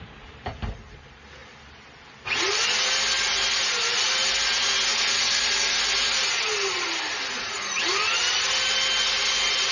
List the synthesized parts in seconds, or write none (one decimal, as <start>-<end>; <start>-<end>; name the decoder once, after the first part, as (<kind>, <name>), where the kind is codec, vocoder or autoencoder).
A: none